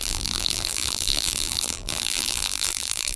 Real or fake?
fake